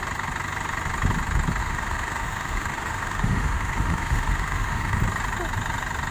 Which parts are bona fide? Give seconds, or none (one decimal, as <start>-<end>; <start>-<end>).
0.0-1.6; 5.0-6.1